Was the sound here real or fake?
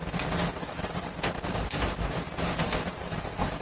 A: real